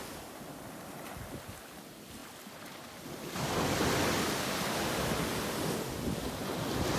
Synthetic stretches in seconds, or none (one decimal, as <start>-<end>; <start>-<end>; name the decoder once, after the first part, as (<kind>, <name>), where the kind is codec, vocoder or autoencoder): none